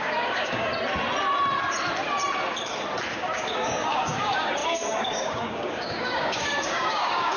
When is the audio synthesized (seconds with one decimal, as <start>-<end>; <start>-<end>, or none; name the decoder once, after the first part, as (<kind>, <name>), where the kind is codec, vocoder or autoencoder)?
0.0-0.7 (codec, DAC); 3.1-7.4